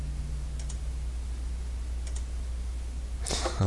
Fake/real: real